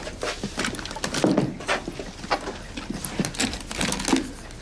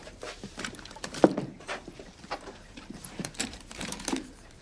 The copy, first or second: second